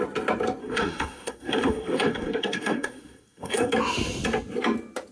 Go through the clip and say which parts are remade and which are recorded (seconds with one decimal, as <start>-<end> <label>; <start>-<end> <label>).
0.0-0.6 recorded; 0.6-3.7 remade; 3.7-5.1 recorded